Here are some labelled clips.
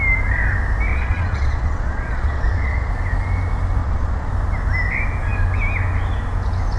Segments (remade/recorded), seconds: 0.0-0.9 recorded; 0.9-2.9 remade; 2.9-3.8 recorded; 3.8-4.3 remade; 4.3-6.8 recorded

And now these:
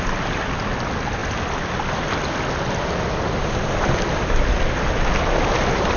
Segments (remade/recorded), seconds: 0.0-6.0 recorded

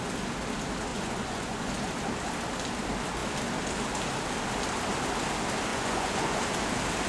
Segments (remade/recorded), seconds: 0.0-0.9 recorded; 0.9-1.7 remade; 1.7-5.7 recorded; 5.7-6.4 remade; 6.4-7.1 recorded

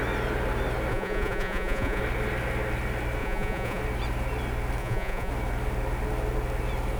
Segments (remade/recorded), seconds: 0.0-0.9 recorded; 0.9-2.0 remade; 2.0-3.2 recorded; 3.2-3.8 remade; 3.8-4.8 recorded; 4.8-5.3 remade; 5.3-7.0 recorded

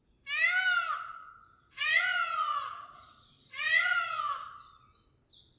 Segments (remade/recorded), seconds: 0.0-1.2 recorded; 1.2-4.2 remade; 4.2-5.6 recorded